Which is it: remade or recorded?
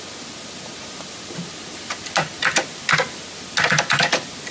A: recorded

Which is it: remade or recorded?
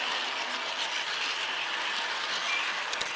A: recorded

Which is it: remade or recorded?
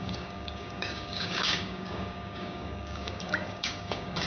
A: remade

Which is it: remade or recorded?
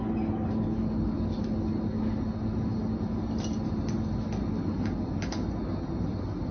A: recorded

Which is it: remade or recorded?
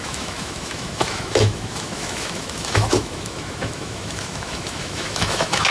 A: remade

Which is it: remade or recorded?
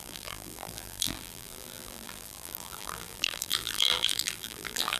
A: remade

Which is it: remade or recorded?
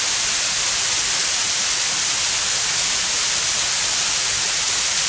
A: recorded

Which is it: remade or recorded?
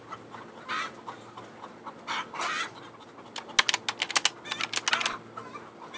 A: recorded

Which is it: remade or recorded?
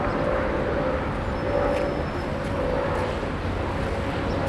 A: recorded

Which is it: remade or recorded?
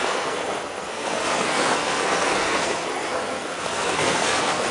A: remade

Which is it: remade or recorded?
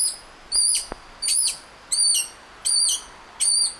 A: recorded